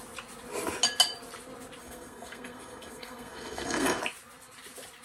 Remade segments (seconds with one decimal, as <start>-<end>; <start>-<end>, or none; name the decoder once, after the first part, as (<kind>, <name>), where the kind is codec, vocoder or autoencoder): 1.8-4.0 (codec, SNAC)

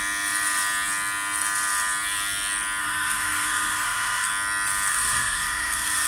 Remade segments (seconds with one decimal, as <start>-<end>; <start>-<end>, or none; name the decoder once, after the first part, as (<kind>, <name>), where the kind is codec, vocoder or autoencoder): 2.8-4.3 (codec, SNAC); 4.9-6.1

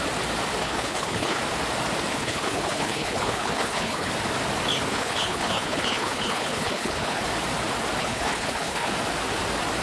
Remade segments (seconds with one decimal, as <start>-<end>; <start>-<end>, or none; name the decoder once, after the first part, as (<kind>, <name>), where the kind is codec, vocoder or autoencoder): 0.6-1.4 (codec, HILCodec); 2.1-4.1; 4.9-7.2; 8.0-8.9